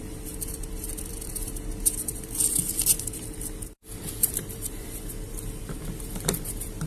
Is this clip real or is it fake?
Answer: fake